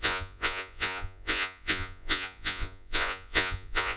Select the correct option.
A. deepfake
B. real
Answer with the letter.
A